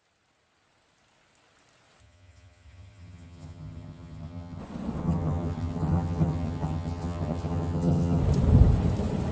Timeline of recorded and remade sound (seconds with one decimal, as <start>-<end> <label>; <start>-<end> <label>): 0.0-2.0 recorded; 2.0-4.6 remade; 4.6-5.0 recorded; 5.0-8.2 remade; 8.2-9.3 recorded